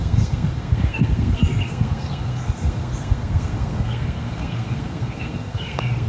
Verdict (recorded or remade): remade